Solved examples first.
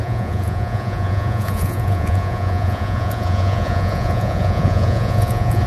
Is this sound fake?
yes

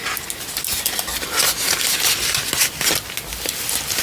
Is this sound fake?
no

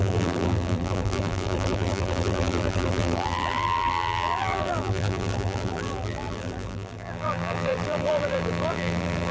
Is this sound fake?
yes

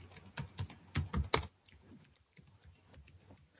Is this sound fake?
no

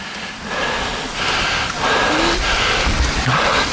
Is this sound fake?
no